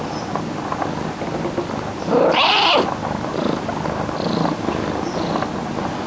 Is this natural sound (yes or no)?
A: yes